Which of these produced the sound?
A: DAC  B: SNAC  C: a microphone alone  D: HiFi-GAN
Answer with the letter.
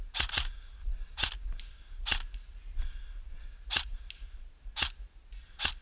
C